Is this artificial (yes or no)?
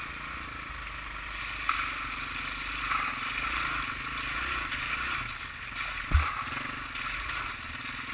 no